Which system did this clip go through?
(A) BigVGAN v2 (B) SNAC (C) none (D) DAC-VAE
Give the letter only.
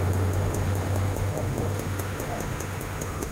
D